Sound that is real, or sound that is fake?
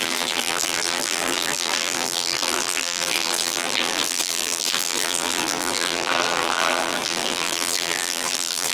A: fake